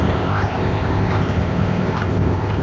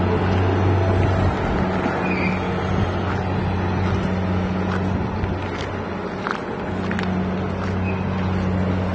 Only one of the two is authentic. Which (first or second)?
second